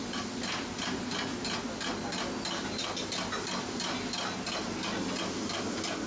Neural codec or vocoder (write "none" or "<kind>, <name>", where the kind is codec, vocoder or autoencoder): none